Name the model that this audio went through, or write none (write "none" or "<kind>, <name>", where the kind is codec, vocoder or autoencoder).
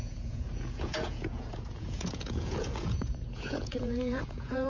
vocoder, Vocos